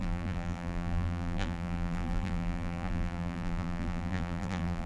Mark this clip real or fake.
fake